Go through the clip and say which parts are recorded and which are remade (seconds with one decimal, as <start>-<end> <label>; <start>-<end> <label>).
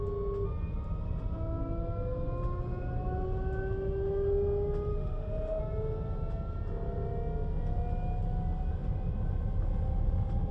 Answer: 0.0-4.9 recorded; 4.9-5.6 remade; 5.6-10.5 recorded